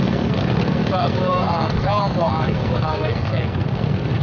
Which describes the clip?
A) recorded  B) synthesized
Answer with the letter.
B